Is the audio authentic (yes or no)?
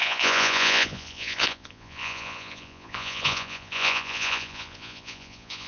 no